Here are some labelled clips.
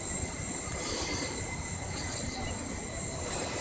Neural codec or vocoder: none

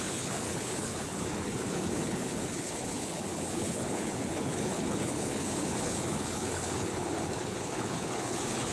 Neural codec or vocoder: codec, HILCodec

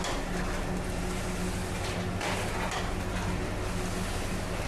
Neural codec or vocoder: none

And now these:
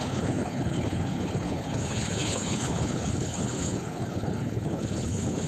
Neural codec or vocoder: codec, HILCodec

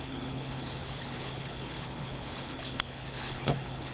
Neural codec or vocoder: codec, HILCodec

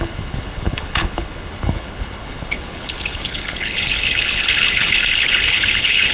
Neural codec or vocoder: codec, HILCodec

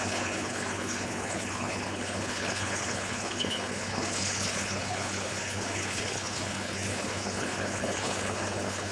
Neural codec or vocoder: codec, HILCodec